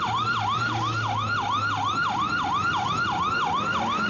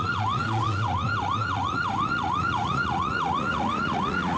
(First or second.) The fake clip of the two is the second